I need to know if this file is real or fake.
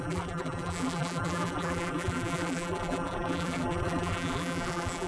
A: fake